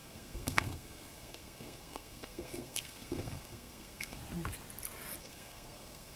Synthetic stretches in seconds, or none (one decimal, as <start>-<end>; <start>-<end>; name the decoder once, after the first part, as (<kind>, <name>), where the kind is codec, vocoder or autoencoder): 0.0-4.2 (codec, SNAC); 5.2-6.2